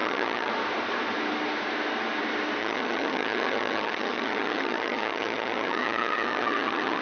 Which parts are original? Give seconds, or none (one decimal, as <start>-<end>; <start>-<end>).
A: 0.5-2.6